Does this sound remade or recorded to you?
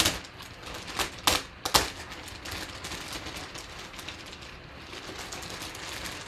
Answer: recorded